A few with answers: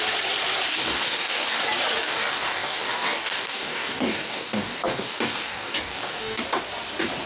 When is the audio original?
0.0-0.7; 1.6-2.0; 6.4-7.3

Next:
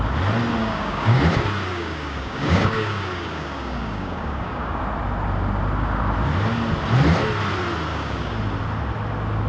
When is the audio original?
0.0-0.6; 1.2-1.7; 4.8-7.9; 8.4-9.5

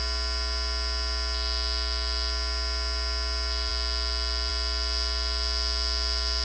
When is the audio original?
0.0-6.4

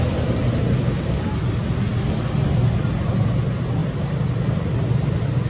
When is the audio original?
0.0-0.8; 1.3-5.5

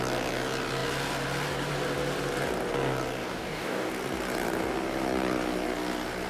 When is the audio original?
0.0-3.2; 3.9-6.3

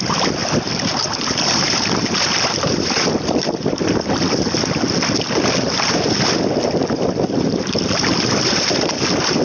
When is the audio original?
0.0-9.4

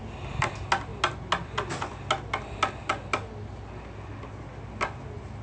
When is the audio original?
0.0-5.4